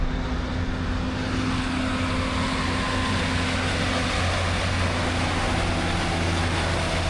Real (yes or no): yes